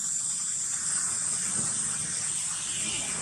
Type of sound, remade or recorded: recorded